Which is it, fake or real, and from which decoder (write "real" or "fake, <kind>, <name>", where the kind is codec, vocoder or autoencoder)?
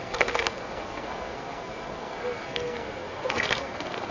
fake, codec, SNAC